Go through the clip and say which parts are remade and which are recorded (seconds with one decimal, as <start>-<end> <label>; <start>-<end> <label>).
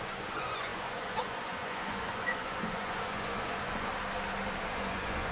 0.0-3.9 remade; 3.9-4.6 recorded; 4.6-5.3 remade